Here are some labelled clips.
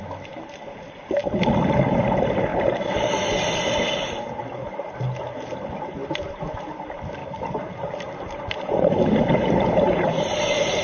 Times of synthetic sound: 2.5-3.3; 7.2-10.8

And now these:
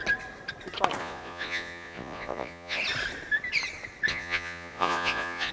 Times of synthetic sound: 1.0-2.8; 4.1-5.5

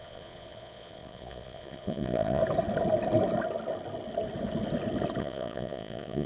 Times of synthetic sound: 0.0-2.4; 5.2-6.3

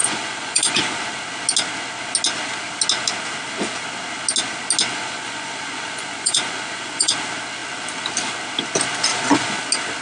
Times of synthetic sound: 0.0-1.0; 4.9-7.1; 9.1-9.6

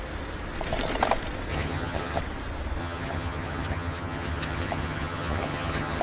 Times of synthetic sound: 1.5-2.2; 2.8-6.0

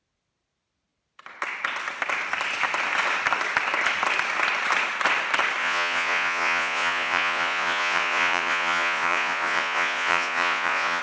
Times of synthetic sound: 5.6-11.0

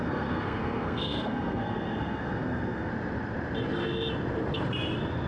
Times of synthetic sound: 0.0-2.9